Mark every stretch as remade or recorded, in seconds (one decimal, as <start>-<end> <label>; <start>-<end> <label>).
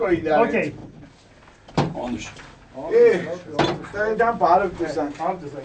0.0-5.6 recorded